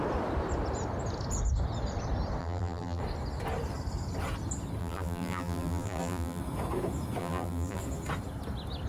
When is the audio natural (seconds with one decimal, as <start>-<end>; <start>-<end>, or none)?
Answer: 0.0-2.4; 3.0-4.8; 6.4-7.2; 7.8-8.9